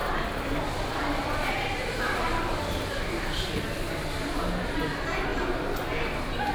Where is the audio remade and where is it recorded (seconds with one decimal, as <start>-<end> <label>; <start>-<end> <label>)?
0.0-3.9 remade; 3.9-5.3 recorded; 5.3-6.0 remade; 6.0-6.5 recorded